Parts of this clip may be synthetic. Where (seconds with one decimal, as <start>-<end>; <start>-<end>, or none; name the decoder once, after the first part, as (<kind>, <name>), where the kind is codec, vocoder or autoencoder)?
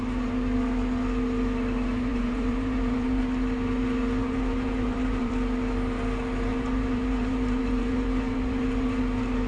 2.1-3.2 (vocoder, BigVGAN v2); 4.2-5.3; 6.5-9.0